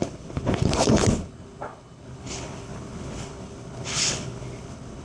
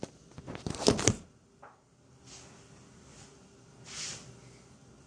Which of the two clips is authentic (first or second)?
second